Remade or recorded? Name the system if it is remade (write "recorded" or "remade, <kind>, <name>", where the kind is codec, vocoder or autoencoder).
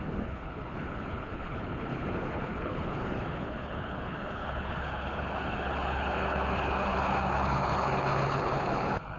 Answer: remade, codec, HILCodec